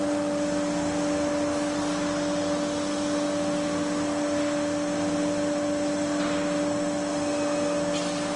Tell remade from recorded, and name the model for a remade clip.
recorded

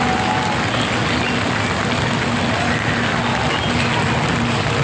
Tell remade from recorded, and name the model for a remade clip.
recorded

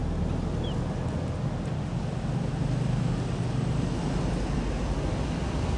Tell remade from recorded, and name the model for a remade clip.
recorded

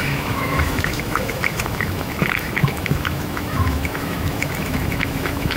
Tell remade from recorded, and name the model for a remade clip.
remade, autoencoder, DAC-VAE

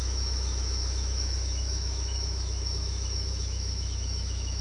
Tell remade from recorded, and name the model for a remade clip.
remade, autoencoder, DAC-VAE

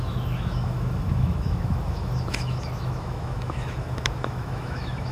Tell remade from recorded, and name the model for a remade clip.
remade, autoencoder, DAC-VAE